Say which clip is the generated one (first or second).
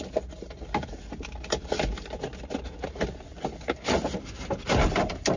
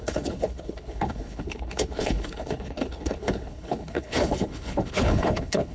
second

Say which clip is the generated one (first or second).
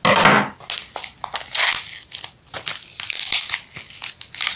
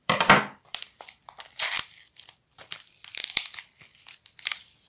second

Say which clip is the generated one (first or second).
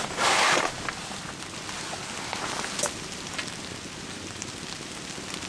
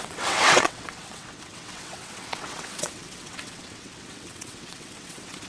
second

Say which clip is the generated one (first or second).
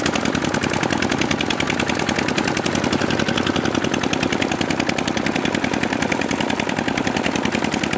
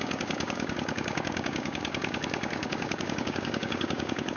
second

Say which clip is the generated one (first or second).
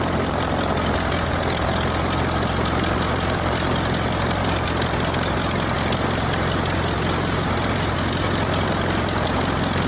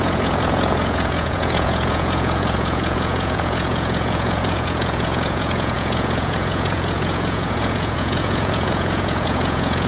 second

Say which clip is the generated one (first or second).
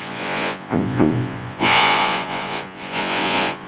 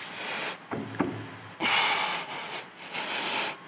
first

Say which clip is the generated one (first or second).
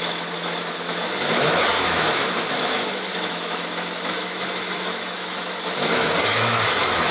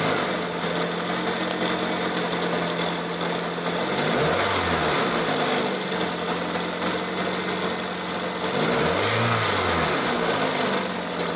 first